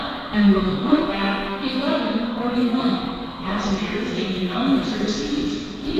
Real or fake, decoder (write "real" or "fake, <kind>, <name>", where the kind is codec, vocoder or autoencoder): fake, codec, SNAC